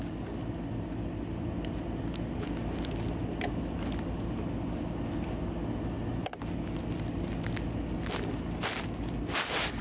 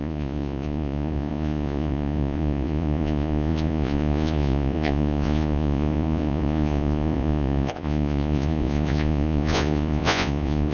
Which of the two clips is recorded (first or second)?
first